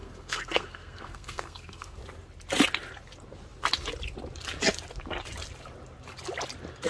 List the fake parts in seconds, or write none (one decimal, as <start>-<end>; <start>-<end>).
0.0-2.0